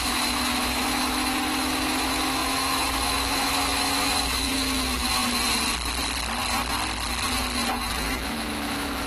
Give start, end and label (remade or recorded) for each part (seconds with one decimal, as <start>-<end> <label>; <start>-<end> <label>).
0.0-5.2 remade; 5.2-7.9 recorded; 7.9-9.1 remade